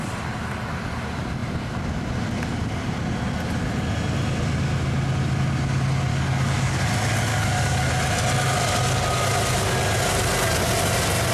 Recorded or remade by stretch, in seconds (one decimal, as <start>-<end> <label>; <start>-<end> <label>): 0.0-6.1 recorded; 6.1-6.8 remade; 6.8-7.3 recorded; 7.3-7.9 remade; 7.9-11.3 recorded

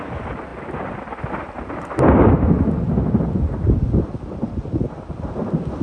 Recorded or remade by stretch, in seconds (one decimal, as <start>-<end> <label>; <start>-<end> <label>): 0.0-5.8 recorded

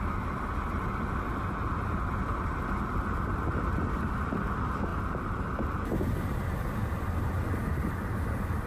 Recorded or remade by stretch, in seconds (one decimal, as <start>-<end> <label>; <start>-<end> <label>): 0.0-8.7 recorded

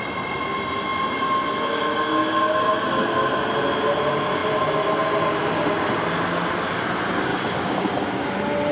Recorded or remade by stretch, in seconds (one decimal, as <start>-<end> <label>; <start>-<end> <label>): 0.0-7.3 recorded; 7.3-7.9 remade; 7.9-8.7 recorded

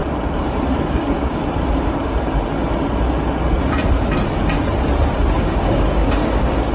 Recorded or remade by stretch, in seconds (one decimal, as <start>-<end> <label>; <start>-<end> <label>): 0.0-0.9 recorded; 0.9-1.4 remade; 1.4-5.4 recorded; 5.4-6.7 remade

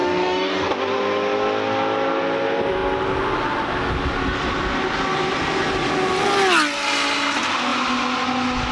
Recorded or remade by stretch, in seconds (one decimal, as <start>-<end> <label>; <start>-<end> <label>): 0.0-0.7 remade; 0.7-8.7 recorded

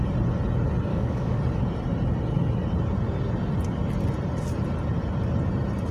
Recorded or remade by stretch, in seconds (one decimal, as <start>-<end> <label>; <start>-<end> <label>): 0.0-0.9 recorded; 0.9-1.4 remade; 1.4-5.9 recorded

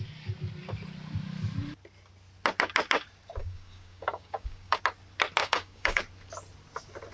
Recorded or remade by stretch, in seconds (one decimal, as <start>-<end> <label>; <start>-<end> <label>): 0.0-3.4 recorded; 3.4-4.8 remade; 4.8-5.4 recorded; 5.4-6.0 remade; 6.0-7.1 recorded